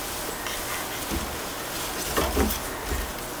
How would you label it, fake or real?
real